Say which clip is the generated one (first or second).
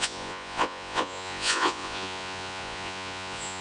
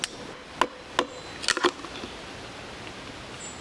first